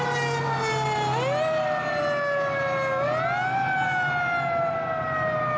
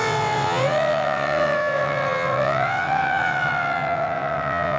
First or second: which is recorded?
first